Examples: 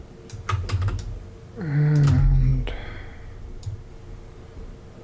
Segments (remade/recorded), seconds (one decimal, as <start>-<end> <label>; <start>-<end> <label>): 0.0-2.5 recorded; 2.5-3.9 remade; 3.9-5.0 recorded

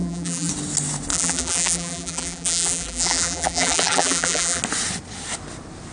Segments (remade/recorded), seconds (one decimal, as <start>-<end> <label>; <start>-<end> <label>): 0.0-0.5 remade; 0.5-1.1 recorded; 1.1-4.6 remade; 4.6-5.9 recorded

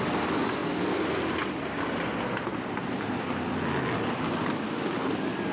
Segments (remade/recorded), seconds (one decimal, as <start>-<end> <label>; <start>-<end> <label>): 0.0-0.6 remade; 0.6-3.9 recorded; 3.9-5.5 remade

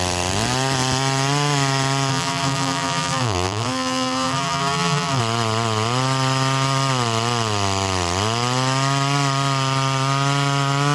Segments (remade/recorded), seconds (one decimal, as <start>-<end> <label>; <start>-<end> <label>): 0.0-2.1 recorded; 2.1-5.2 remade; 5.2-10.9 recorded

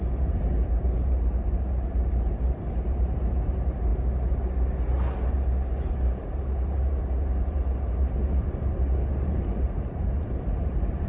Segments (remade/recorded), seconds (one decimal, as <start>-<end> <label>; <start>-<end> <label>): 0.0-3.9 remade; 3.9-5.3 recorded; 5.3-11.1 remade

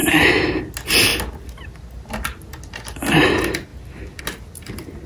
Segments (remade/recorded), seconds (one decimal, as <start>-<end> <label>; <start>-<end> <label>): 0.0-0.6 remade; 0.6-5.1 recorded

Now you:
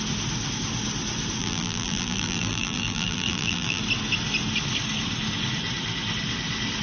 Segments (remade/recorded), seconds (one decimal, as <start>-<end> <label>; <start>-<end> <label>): 0.0-1.4 recorded; 1.4-3.8 remade; 3.8-6.8 recorded

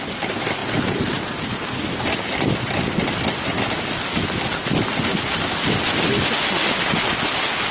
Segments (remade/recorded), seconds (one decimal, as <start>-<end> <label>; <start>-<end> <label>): 0.0-0.6 recorded; 0.6-2.8 remade; 2.8-7.7 recorded